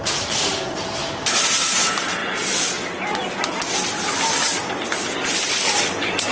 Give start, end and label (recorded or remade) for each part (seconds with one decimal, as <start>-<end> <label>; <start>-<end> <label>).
0.0-6.3 recorded